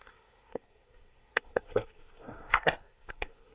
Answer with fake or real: fake